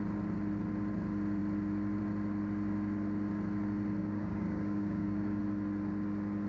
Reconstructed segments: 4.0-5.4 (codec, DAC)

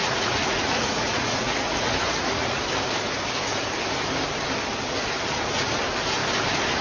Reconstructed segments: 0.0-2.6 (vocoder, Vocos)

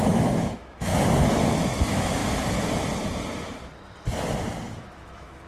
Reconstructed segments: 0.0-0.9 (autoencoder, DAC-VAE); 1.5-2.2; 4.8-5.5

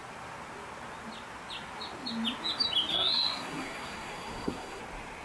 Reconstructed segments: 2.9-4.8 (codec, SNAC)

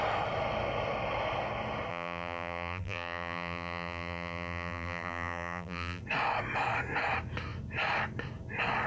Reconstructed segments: 1.9-6.0 (vocoder, BigVGAN v2)

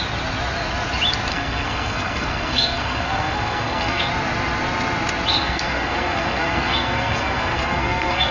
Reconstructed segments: 1.3-4.1 (codec, SNAC); 5.3-8.3